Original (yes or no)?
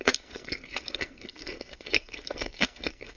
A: no